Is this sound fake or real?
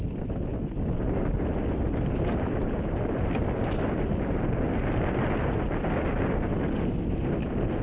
real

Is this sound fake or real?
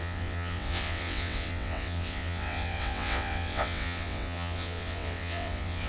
fake